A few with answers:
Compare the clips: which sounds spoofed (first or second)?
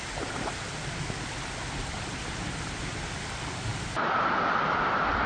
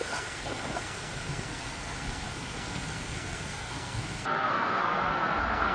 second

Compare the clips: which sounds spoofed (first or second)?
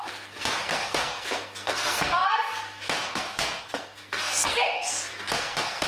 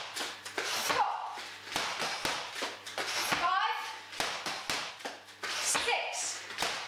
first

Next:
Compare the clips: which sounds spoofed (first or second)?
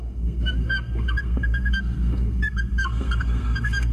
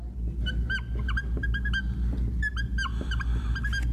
first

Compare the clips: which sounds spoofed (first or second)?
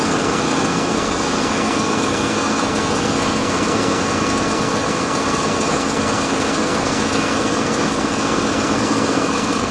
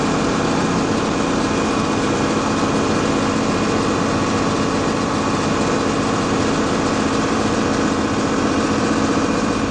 first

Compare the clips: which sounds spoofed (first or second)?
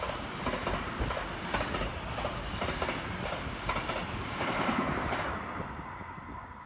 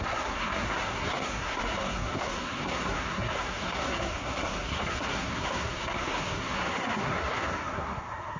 second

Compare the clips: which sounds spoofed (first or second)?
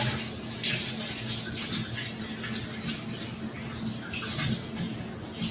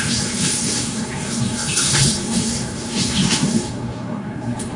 second